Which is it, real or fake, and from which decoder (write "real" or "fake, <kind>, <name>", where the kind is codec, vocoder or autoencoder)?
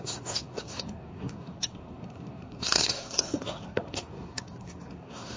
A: fake, codec, SNAC